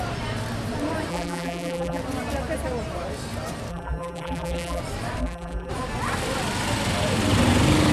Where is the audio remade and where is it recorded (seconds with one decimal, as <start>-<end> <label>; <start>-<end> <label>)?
0.0-1.1 recorded; 1.1-2.0 remade; 2.0-3.7 recorded; 3.7-4.8 remade; 4.8-5.2 recorded; 5.2-5.7 remade; 5.7-7.9 recorded